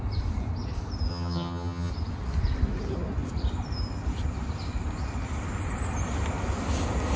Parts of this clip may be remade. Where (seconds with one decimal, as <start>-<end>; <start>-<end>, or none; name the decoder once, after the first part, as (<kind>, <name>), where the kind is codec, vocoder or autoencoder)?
1.1-1.9 (vocoder, HiFi-GAN)